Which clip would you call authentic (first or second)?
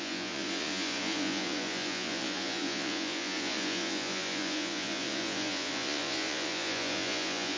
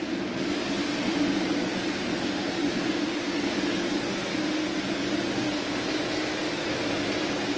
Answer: second